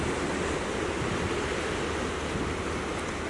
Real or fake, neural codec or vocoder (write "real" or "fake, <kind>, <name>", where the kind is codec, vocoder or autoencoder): real